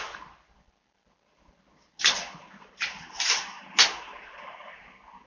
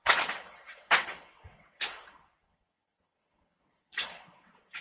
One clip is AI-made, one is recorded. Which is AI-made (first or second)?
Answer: second